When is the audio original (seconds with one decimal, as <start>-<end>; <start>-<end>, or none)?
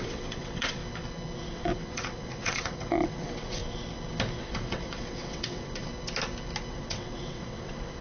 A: 0.8-1.5; 3.6-4.4; 5.8-6.7